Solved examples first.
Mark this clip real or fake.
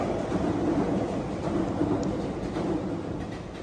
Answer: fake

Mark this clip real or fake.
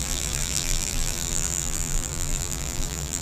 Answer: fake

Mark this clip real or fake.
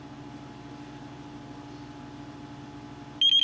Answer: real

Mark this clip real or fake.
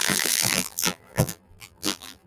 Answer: fake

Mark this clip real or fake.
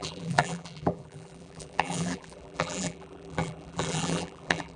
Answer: fake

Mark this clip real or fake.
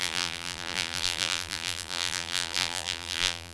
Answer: fake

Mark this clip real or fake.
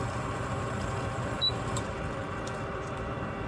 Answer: fake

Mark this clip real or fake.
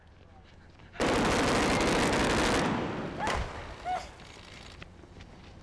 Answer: real